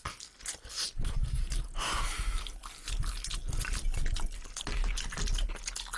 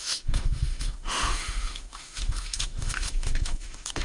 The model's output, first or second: second